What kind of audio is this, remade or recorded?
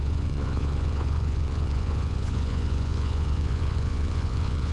remade